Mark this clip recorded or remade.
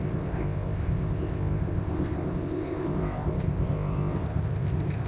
remade